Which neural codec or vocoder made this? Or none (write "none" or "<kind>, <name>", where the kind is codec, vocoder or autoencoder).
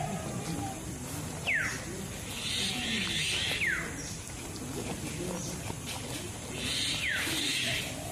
none